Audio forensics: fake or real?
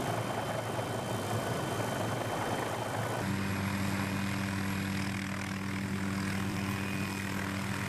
real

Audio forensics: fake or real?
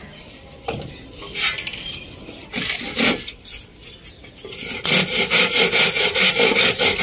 real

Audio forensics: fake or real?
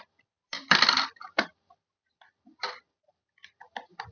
fake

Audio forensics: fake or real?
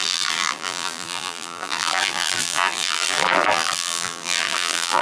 fake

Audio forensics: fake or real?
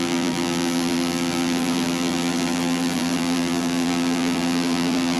fake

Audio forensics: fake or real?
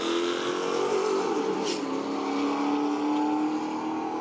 real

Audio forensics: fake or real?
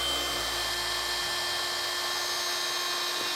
real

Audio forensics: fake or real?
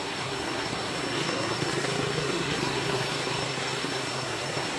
fake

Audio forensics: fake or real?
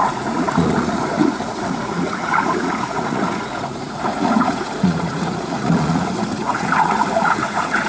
fake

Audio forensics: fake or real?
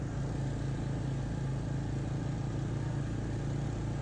real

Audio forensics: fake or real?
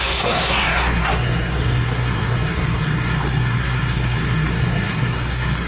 fake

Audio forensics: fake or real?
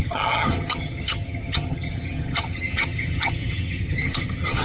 fake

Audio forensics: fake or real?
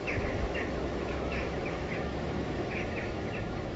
fake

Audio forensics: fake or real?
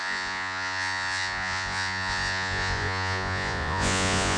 fake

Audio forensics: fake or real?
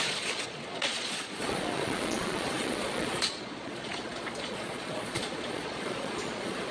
fake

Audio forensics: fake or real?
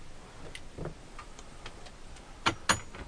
real